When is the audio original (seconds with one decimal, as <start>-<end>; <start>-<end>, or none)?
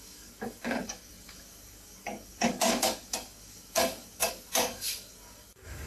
none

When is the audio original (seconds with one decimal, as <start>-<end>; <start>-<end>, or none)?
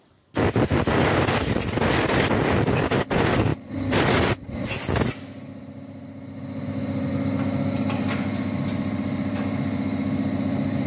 0.0-10.9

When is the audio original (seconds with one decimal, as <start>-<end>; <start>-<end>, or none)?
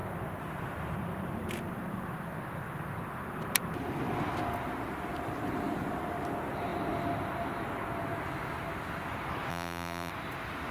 0.0-9.5; 10.1-10.7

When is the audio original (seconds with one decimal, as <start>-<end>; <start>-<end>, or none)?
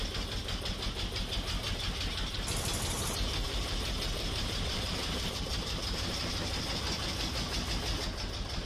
0.0-3.4; 6.7-8.7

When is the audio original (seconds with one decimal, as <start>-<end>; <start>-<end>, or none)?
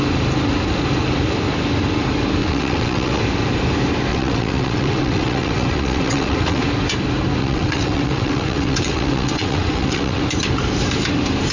0.0-2.4; 3.2-4.1; 6.6-7.4; 10.2-11.5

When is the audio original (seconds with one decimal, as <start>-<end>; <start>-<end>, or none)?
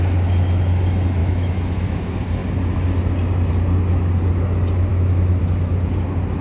0.0-1.2; 2.0-4.9; 5.4-6.4